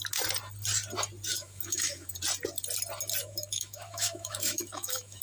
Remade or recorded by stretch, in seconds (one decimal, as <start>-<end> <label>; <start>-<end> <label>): 0.0-1.3 recorded; 1.3-2.1 remade; 2.1-3.2 recorded; 3.2-5.2 remade